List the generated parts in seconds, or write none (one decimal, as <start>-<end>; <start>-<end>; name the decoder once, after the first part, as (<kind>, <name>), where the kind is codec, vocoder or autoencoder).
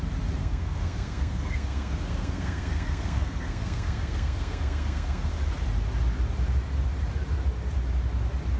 0.4-5.3 (codec, SNAC)